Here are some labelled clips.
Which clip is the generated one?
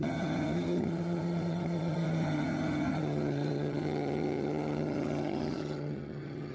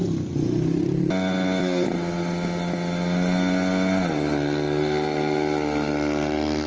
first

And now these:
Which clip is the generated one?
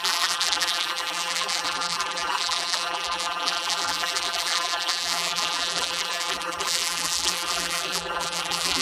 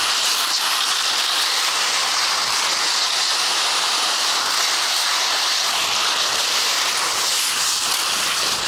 first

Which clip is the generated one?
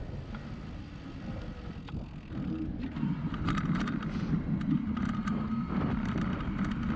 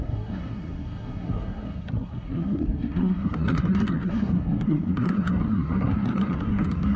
second